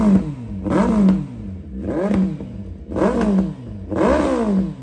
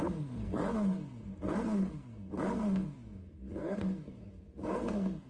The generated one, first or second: second